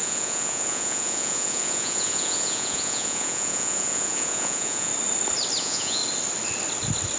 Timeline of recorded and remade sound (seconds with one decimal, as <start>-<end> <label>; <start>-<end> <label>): 0.0-4.9 remade; 4.9-5.6 recorded; 5.6-6.0 remade; 6.0-7.2 recorded